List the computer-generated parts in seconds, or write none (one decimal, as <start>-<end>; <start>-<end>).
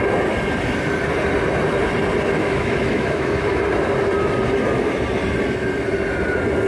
2.4-3.6